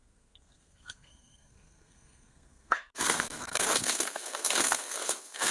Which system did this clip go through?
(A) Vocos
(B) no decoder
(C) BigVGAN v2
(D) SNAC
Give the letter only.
D